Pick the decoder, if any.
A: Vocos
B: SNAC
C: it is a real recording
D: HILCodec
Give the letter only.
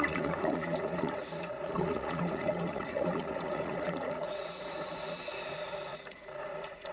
A